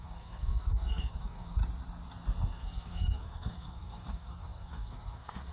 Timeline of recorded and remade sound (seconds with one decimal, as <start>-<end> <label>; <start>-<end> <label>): 0.0-1.6 remade; 1.6-2.5 recorded; 2.5-5.5 remade